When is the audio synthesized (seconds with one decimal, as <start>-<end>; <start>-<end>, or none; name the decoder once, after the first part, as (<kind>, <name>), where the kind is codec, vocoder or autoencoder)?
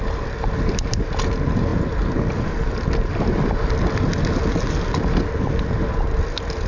none